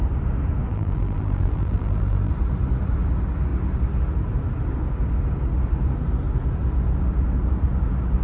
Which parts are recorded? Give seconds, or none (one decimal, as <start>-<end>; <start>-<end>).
0.0-0.7; 2.3-8.2